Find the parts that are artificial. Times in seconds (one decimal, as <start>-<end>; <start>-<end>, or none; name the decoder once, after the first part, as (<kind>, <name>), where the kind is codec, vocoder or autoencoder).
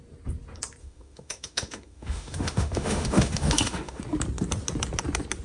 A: 0.8-4.0 (autoencoder, DAC-VAE)